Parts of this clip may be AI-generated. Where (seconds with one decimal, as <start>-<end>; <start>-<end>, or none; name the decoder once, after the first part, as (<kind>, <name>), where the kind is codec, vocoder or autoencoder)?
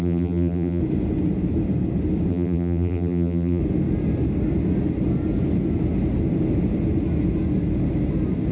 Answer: 0.0-0.8 (vocoder, BigVGAN v2); 2.3-3.6